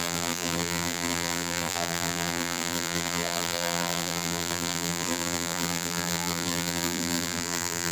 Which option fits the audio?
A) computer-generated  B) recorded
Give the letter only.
A